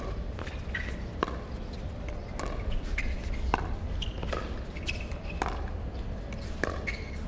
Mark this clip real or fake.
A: real